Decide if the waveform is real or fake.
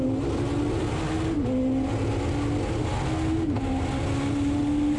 real